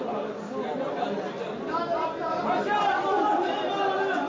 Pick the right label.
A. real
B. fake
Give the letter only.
A